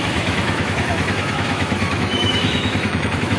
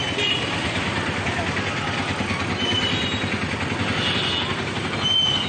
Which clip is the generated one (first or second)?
first